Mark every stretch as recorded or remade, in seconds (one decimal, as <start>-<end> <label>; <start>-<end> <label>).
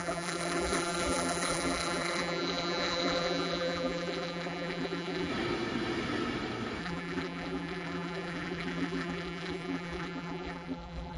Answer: 0.0-5.3 remade; 5.3-6.8 recorded; 6.8-11.2 remade